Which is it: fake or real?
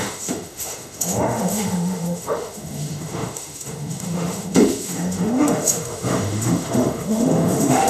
fake